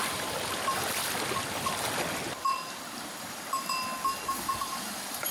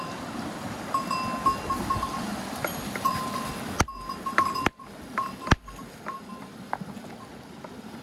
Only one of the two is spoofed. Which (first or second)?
first